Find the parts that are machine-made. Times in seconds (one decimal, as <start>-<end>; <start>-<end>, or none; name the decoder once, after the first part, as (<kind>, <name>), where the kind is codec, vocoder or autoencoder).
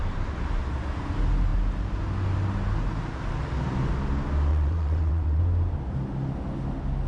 4.5-5.4 (vocoder, WaveNeXt)